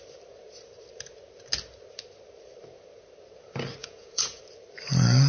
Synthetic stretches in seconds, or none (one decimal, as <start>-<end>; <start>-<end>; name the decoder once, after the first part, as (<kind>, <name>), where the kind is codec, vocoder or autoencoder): 3.8-4.4 (vocoder, Vocos)